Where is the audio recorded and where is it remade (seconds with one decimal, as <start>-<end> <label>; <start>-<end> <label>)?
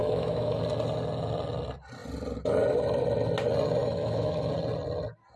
0.0-0.6 remade; 0.6-3.8 recorded; 3.8-4.5 remade; 4.5-5.4 recorded